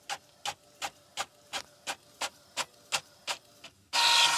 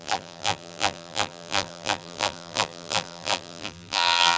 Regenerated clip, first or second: second